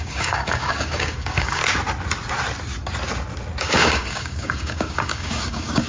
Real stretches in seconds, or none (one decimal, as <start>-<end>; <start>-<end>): 1.6-3.6